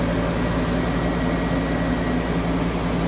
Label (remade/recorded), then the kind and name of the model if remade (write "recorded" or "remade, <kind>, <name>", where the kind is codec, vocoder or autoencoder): recorded